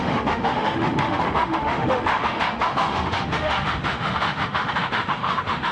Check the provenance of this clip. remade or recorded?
remade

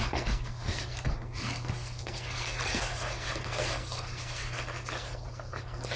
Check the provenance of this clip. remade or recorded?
remade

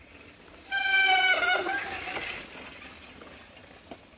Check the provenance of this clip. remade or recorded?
recorded